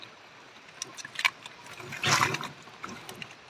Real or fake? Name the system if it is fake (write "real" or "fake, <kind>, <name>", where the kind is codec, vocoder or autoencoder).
real